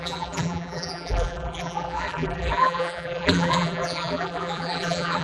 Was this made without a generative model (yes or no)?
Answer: no